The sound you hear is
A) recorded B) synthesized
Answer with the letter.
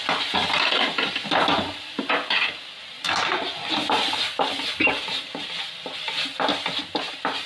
A